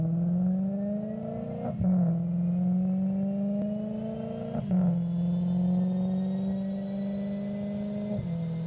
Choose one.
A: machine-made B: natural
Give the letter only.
B